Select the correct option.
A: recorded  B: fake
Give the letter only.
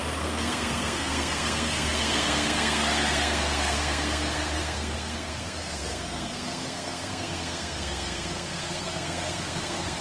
B